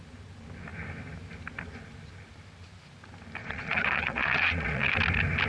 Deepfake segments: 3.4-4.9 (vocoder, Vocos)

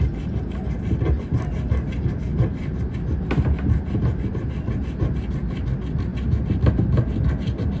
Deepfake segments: none